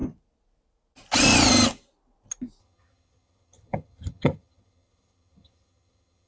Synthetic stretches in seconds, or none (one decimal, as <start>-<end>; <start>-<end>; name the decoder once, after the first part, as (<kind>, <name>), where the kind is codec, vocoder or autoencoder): 2.6-6.3 (vocoder, HiFi-GAN)